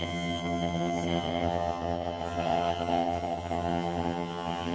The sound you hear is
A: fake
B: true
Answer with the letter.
A